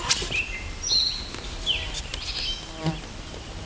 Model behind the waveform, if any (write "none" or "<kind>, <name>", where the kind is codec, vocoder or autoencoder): none